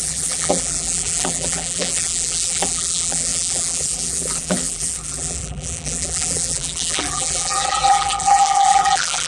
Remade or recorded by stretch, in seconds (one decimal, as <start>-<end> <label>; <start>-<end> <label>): 0.0-9.3 remade